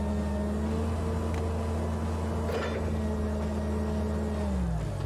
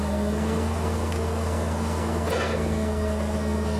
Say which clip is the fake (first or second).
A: second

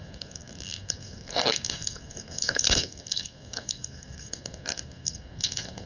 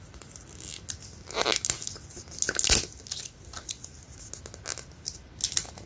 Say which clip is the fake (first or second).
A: first